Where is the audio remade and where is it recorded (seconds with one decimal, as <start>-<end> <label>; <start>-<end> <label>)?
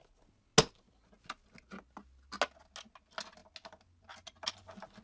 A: 0.0-5.0 recorded